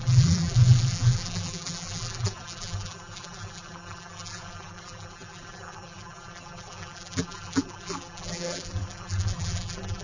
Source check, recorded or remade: remade